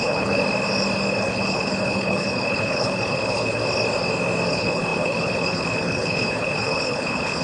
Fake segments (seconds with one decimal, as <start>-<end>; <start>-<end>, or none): 0.0-0.4; 1.1-3.6; 4.5-7.4